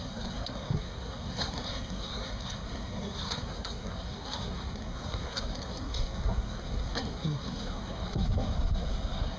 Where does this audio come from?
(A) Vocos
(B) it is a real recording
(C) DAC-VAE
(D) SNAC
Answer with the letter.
D